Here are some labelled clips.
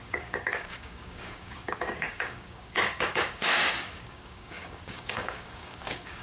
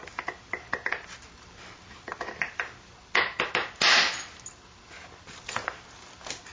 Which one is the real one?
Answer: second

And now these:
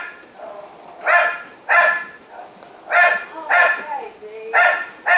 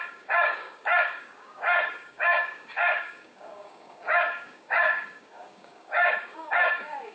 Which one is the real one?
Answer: first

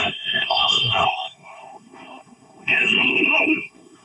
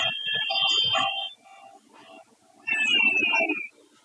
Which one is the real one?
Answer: second